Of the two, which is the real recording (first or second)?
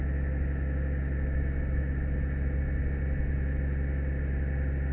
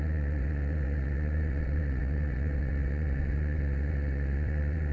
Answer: first